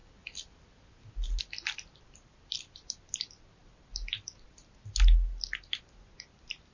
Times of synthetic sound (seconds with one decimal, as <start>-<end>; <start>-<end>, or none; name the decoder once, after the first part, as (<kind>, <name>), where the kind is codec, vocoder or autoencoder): none